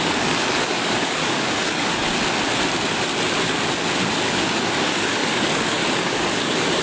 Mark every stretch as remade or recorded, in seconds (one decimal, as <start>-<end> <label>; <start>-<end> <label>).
0.0-2.1 remade; 2.1-4.3 recorded; 4.3-6.8 remade